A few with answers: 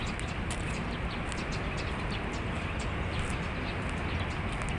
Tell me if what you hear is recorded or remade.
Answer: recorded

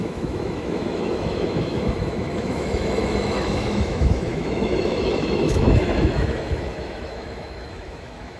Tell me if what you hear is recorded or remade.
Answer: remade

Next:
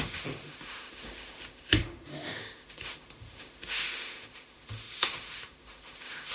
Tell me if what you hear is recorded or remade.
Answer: remade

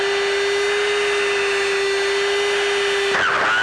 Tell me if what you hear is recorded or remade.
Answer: recorded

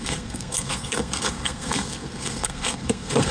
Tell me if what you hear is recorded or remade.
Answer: remade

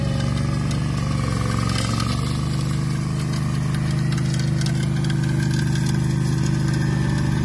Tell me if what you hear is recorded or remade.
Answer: recorded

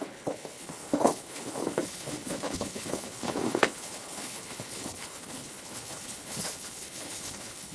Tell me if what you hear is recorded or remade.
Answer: remade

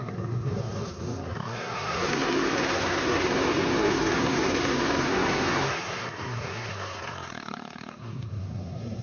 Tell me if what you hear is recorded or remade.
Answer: remade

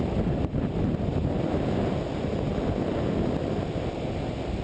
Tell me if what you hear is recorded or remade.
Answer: recorded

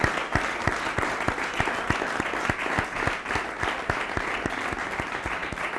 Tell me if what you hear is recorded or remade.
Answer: recorded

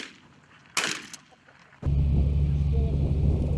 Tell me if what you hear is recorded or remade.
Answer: recorded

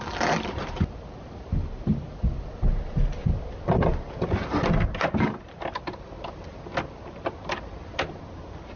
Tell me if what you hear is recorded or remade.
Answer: recorded